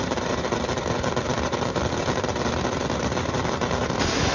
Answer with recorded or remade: remade